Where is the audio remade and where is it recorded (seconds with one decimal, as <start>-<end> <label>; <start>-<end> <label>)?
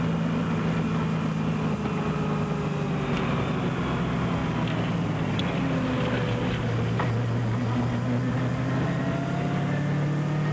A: 0.0-10.5 recorded